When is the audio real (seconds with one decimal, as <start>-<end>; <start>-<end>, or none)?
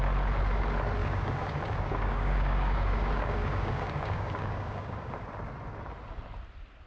0.0-1.0; 5.1-6.9